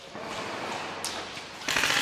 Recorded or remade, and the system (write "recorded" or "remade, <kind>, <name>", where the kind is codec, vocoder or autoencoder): recorded